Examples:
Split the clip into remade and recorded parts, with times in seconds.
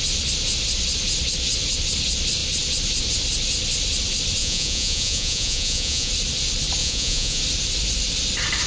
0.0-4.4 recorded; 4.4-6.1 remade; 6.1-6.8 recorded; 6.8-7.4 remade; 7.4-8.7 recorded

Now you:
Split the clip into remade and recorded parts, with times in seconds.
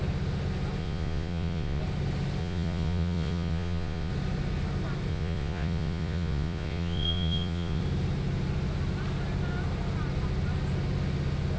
0.0-0.8 recorded; 0.8-1.8 remade; 1.8-2.4 recorded; 2.4-4.1 remade; 4.1-5.1 recorded; 5.1-7.8 remade; 7.8-11.6 recorded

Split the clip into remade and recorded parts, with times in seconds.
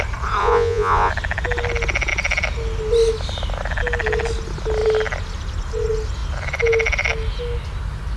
0.0-0.4 recorded; 0.4-1.1 remade; 1.1-8.2 recorded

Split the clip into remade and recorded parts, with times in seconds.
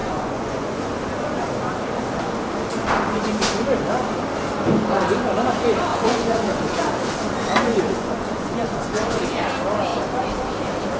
0.0-0.8 remade; 0.8-5.9 recorded; 5.9-6.8 remade; 6.8-7.7 recorded; 7.7-9.4 remade; 9.4-11.0 recorded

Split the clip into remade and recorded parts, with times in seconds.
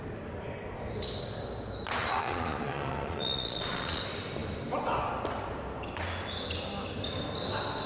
0.0-2.0 recorded; 2.0-4.0 remade; 4.0-7.9 recorded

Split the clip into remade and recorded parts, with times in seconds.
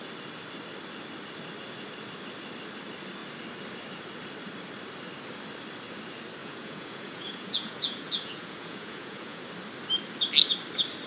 0.0-6.4 recorded; 6.4-9.4 remade; 9.4-11.1 recorded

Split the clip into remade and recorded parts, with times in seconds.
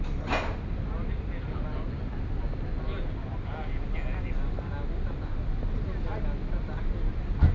0.0-7.5 recorded